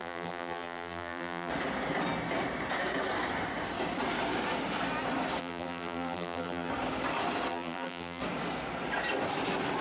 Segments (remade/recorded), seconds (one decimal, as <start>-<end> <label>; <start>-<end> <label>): 0.0-1.5 remade; 1.5-5.4 recorded; 5.4-6.7 remade; 6.7-7.5 recorded; 7.5-8.2 remade; 8.2-9.8 recorded